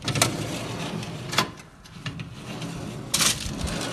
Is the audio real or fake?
real